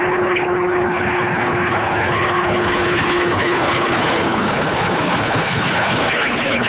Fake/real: fake